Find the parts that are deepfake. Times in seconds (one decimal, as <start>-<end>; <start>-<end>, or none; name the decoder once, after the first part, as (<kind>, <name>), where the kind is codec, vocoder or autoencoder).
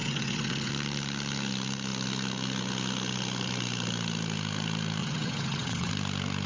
0.0-0.7 (vocoder, WaveNeXt); 5.0-5.9